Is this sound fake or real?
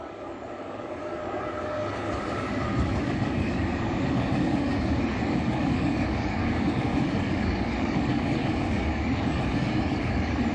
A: fake